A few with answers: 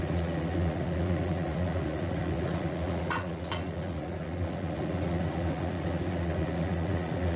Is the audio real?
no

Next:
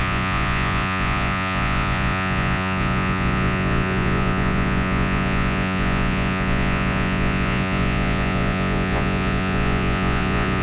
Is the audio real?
no